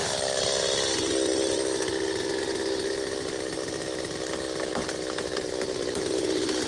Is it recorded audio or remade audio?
recorded